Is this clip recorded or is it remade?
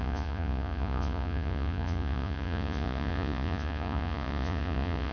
remade